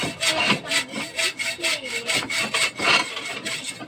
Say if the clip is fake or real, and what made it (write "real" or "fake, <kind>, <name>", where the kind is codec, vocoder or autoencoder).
real